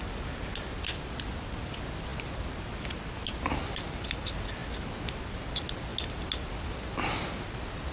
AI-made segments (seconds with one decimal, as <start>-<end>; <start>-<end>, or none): none